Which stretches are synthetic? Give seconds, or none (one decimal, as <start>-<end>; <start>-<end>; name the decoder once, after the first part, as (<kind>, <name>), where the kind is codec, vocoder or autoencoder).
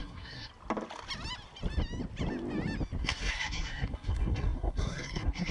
0.0-0.5 (codec, SNAC); 3.0-5.5